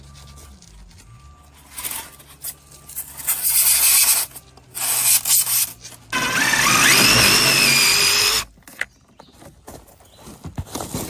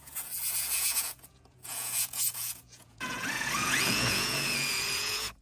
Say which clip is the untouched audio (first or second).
first